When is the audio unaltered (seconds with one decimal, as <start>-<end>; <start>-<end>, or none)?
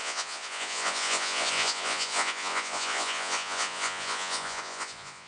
none